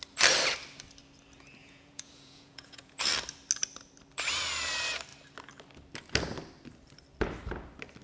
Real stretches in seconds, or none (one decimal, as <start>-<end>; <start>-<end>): 0.0-1.6; 3.1-8.0